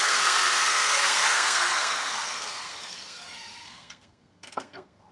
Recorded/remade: remade